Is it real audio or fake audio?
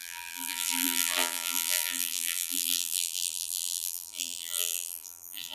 fake